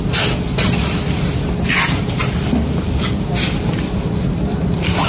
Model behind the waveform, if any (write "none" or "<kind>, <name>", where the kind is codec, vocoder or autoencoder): none